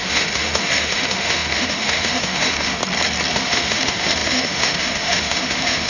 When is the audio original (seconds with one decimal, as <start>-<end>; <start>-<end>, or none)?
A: 2.8-3.3